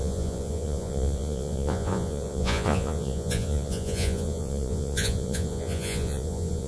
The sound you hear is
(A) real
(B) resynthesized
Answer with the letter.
B